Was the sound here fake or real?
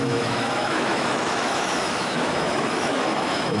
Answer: fake